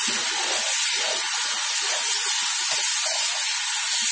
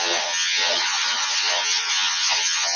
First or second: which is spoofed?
second